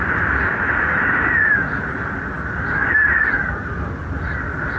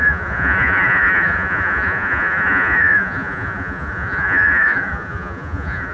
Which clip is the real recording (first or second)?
first